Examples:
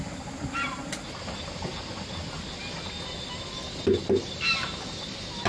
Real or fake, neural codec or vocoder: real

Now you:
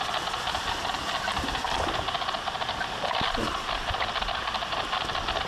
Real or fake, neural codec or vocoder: real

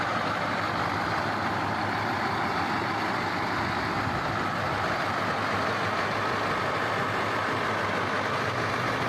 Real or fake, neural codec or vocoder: real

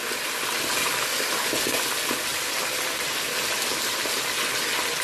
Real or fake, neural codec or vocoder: real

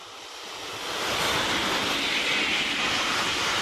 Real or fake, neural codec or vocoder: real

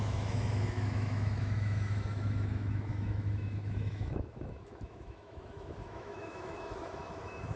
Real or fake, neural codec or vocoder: fake, autoencoder, DAC-VAE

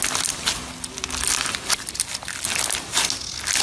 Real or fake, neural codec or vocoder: real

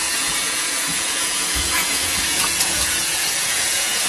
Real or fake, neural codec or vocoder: fake, vocoder, Vocos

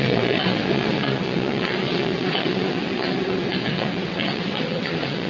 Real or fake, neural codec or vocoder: fake, vocoder, WaveNeXt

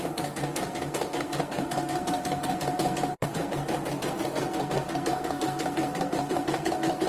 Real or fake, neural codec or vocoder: fake, codec, SNAC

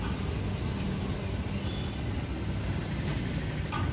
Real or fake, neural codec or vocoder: real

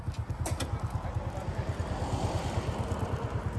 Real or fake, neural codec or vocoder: real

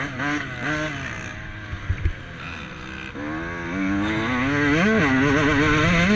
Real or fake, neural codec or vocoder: real